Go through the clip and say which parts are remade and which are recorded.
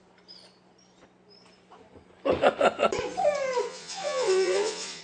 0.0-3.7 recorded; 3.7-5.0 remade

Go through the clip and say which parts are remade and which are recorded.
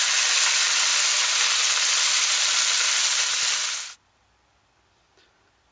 0.0-5.7 recorded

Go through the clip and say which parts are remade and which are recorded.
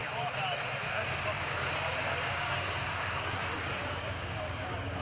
0.0-0.9 recorded; 0.9-5.0 remade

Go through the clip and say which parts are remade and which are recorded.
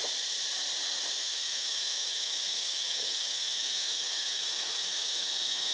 0.0-1.1 recorded; 1.1-5.7 remade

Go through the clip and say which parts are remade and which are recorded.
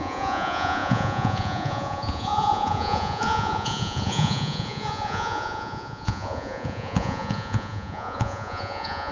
0.0-9.1 remade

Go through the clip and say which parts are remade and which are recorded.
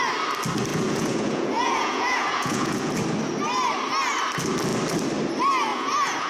0.0-0.7 recorded; 0.7-2.9 remade; 2.9-5.7 recorded; 5.7-6.3 remade